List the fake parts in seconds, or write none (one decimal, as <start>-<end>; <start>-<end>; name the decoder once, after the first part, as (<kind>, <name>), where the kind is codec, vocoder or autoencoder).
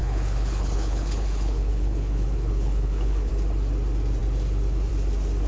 0.0-3.3 (codec, HILCodec)